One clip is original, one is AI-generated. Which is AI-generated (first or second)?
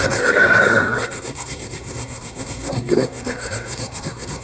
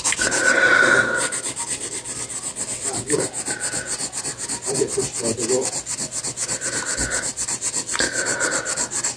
first